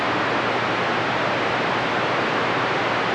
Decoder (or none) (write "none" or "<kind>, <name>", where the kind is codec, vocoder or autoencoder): none